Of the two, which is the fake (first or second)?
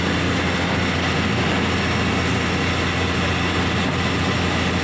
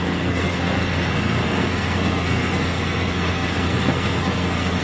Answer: second